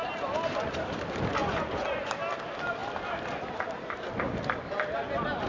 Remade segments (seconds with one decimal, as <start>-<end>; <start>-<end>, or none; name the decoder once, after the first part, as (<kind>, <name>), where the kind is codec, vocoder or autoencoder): 1.4-2.1 (vocoder, Vocos)